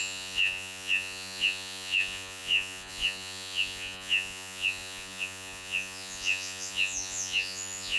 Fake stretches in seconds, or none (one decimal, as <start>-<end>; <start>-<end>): 0.0-8.0